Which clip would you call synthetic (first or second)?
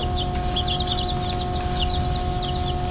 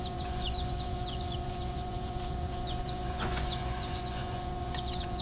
second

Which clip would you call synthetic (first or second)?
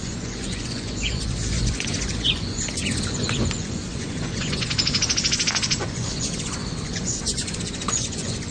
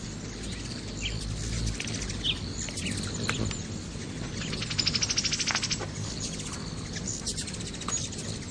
first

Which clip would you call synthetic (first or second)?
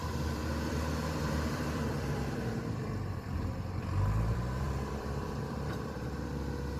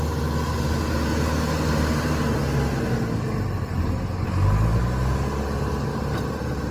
first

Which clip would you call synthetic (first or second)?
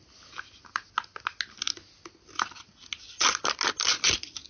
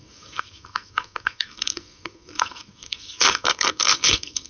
second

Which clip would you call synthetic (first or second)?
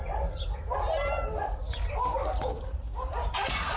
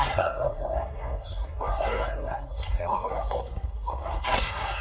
second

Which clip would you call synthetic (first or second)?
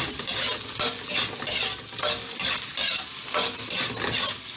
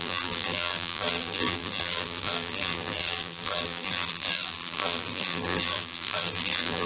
second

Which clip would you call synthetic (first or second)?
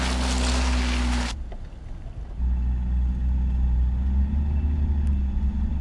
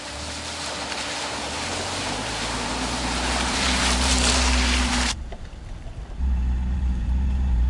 second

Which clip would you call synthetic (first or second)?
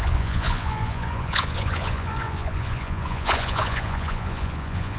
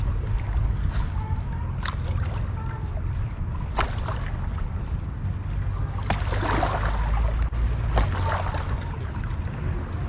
first